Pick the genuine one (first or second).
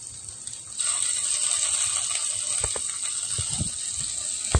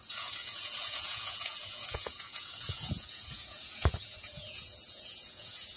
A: first